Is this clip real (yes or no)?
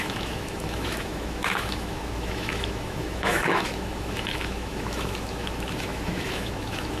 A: no